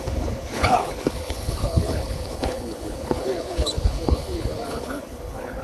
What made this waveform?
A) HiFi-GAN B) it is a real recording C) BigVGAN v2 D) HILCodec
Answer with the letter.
D